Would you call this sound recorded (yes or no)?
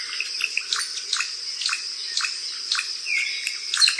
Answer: yes